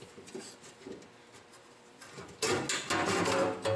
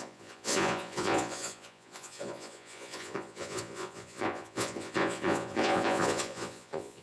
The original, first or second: first